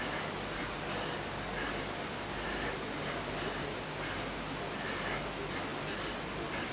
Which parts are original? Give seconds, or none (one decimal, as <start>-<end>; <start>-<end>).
0.0-6.7